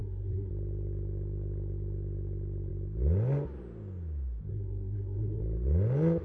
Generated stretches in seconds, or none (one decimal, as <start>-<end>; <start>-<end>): 0.0-0.5; 4.5-5.4